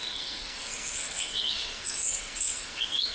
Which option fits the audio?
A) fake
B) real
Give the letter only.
A